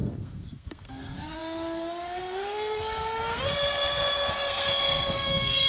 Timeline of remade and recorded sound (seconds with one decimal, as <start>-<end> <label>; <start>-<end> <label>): 0.0-5.7 remade